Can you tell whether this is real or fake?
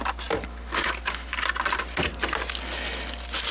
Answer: real